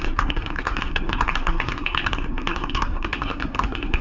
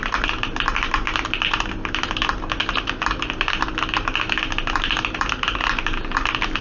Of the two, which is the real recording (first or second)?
second